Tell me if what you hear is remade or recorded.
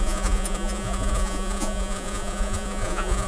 remade